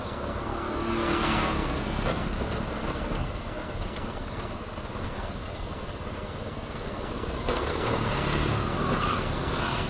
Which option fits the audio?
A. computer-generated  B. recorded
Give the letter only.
A